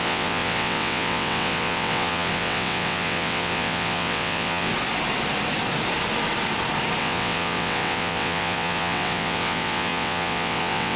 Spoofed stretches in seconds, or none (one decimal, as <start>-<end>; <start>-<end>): 0.0-4.7; 7.0-11.0